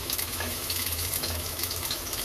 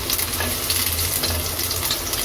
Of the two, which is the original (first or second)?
second